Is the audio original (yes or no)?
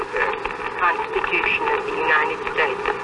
yes